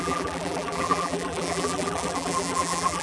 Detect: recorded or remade remade